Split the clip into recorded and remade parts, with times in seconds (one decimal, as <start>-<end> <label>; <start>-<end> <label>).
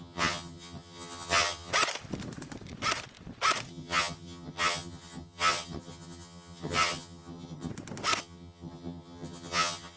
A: 0.0-1.7 remade; 1.7-3.7 recorded; 3.7-7.7 remade; 7.7-8.2 recorded; 8.2-10.0 remade